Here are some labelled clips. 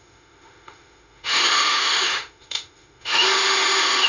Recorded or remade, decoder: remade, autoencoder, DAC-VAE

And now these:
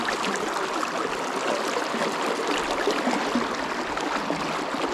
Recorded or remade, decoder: recorded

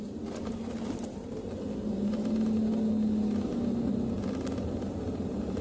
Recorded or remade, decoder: recorded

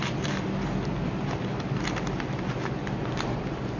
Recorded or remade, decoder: recorded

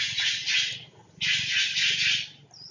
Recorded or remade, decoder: recorded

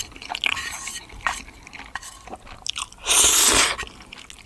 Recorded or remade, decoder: recorded